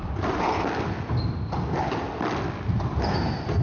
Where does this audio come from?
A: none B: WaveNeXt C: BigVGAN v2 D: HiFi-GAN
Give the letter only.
A